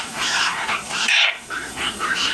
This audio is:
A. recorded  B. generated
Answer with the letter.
B